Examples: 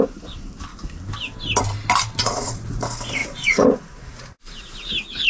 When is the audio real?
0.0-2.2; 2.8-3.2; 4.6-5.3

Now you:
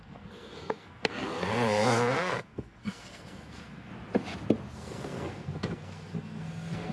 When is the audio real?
3.9-4.7

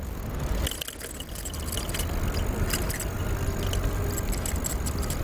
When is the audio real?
0.0-5.2